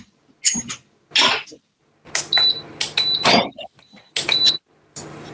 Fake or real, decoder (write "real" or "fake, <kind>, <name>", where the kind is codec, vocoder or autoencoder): real